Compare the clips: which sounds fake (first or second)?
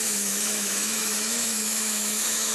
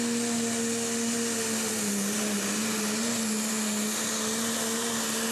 first